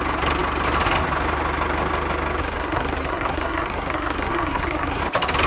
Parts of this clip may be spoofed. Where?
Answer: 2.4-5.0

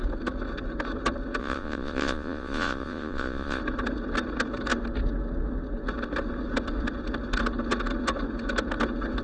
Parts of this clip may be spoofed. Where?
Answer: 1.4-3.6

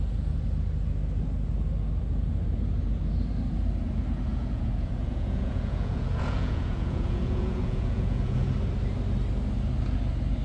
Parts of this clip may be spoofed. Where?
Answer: 4.4-8.5

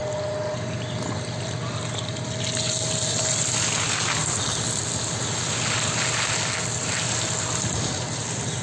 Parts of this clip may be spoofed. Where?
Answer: 3.2-8.6